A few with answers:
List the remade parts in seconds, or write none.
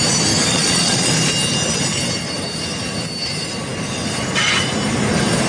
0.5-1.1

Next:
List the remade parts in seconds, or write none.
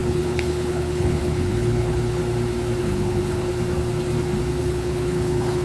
0.0-2.2; 2.8-3.5; 4.6-5.6